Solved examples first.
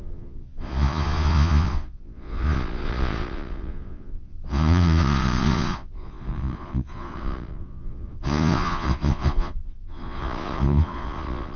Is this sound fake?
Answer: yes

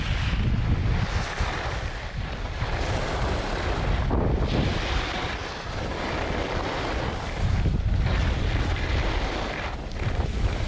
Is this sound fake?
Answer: no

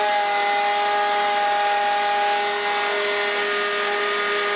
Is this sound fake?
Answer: no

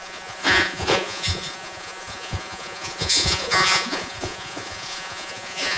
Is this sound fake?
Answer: yes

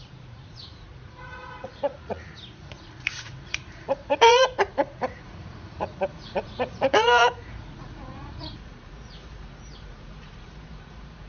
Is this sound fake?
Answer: yes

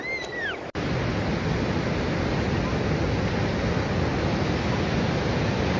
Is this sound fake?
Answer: no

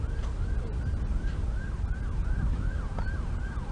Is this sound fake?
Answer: no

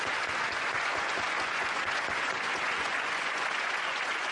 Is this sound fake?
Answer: yes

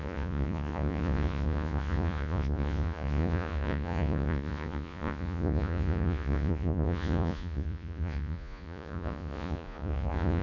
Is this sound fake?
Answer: yes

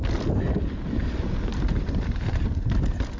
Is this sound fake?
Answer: no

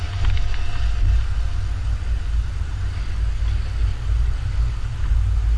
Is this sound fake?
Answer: no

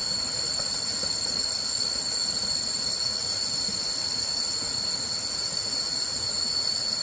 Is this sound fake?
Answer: yes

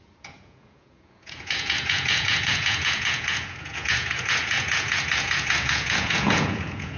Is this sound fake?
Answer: yes